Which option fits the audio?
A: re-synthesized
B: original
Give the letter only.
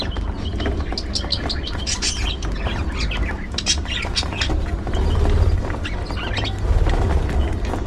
B